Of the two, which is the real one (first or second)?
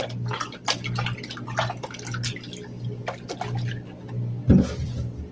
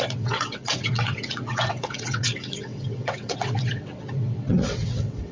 first